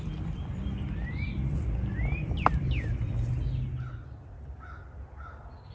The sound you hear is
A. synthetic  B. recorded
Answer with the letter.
B